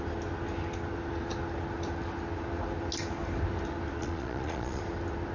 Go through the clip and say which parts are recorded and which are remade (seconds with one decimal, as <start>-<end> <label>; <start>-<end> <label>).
0.0-4.0 recorded; 4.0-4.8 remade; 4.8-5.3 recorded